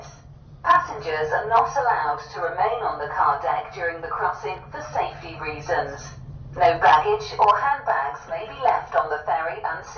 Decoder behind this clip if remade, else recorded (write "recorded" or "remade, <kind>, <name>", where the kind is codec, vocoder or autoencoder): recorded